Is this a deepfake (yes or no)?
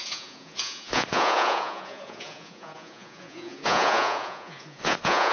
yes